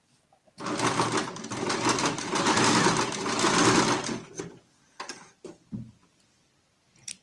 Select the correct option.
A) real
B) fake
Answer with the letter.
A